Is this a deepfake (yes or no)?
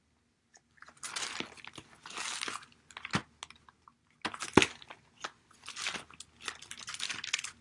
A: no